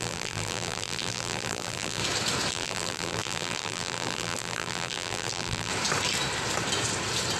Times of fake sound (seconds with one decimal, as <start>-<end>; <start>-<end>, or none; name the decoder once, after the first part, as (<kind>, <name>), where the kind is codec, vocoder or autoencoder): 0.0-2.0 (vocoder, BigVGAN v2); 2.5-5.7